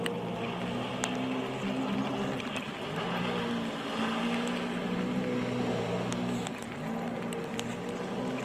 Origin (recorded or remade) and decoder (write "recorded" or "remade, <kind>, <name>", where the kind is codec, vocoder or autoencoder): recorded